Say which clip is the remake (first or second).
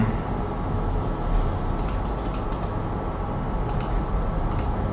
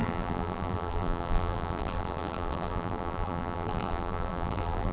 second